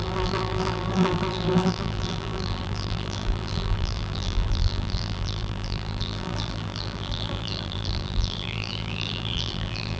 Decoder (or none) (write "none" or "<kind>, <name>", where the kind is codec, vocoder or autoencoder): vocoder, BigVGAN v2